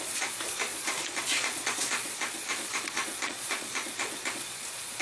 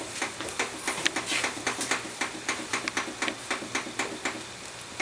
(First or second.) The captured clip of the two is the second